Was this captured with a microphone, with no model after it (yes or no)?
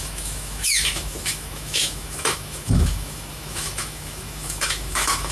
no